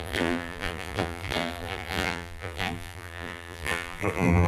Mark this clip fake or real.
fake